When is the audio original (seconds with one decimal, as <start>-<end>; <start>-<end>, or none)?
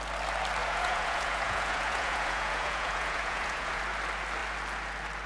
0.0-0.6; 3.8-5.3